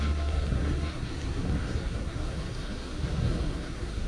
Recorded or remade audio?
remade